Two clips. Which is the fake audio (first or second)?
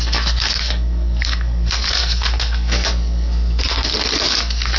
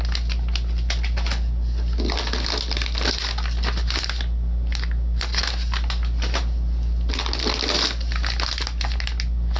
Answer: first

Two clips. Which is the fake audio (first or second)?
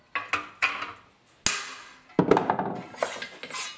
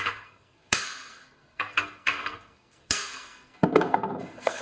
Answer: second